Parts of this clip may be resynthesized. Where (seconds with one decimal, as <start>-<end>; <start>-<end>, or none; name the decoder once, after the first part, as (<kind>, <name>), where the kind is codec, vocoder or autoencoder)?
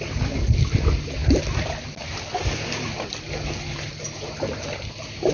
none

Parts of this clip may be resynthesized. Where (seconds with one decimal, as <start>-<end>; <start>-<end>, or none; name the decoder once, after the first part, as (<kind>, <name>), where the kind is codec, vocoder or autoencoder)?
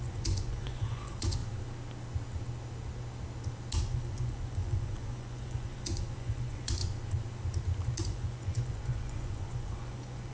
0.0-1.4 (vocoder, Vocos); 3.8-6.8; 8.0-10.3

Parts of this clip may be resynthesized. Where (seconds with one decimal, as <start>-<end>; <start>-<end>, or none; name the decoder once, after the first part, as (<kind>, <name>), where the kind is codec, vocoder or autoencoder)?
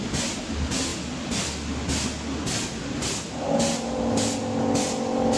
none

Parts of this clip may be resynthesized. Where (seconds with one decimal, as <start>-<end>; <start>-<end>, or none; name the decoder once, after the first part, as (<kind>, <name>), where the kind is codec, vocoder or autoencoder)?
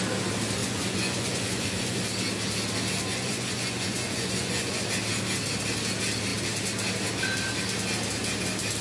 0.6-2.0 (vocoder, Vocos); 3.1-4.8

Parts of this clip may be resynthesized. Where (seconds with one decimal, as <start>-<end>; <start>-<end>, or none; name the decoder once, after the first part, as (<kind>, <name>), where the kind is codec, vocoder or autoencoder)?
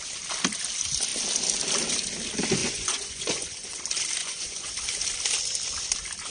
2.6-3.8 (vocoder, Vocos); 4.2-4.7